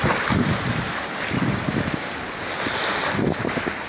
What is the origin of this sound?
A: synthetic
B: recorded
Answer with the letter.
B